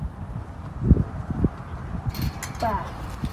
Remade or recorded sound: recorded